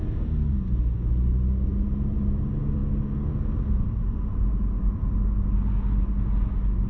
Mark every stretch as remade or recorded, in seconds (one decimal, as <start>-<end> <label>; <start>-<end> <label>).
0.0-6.9 recorded